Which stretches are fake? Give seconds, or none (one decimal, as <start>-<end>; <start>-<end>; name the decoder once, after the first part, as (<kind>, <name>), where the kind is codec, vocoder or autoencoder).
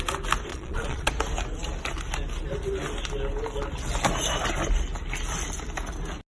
0.5-1.1 (vocoder, Vocos)